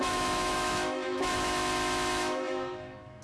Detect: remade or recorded remade